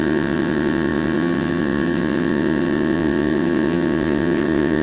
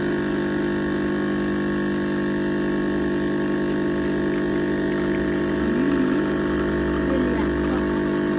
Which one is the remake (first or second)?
first